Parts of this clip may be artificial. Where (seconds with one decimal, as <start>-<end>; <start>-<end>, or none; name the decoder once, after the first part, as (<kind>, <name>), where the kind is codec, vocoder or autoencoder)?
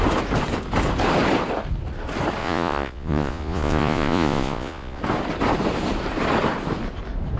2.4-5.0 (vocoder, Vocos)